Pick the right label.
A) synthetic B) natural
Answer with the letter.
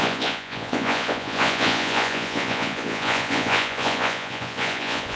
A